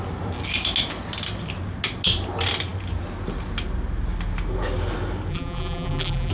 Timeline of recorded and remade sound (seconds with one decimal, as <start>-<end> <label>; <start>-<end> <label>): 0.0-5.3 recorded; 5.3-6.3 remade